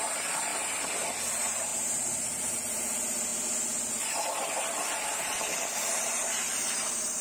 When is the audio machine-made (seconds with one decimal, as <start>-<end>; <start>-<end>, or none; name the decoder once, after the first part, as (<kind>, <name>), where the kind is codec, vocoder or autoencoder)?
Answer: 0.0-0.5 (vocoder, BigVGAN v2); 1.2-3.3; 5.0-7.2